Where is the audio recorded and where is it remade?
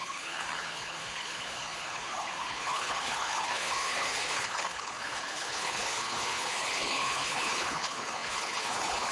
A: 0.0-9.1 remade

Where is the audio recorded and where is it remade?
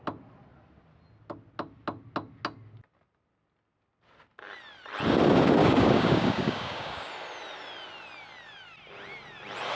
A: 0.0-5.6 recorded; 5.6-7.1 remade; 7.1-9.8 recorded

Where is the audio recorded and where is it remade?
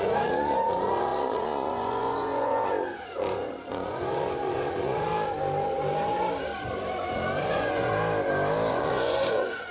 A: 0.0-5.1 remade; 5.1-7.4 recorded; 7.4-7.9 remade; 7.9-8.7 recorded; 8.7-9.7 remade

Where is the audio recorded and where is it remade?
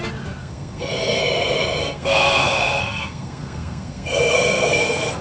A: 0.0-0.4 recorded; 0.4-1.2 remade; 1.2-1.8 recorded; 1.8-5.2 remade